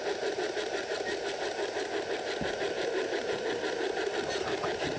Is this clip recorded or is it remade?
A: recorded